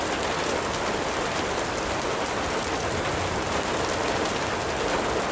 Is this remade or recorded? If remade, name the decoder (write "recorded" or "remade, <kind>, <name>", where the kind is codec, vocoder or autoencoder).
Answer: recorded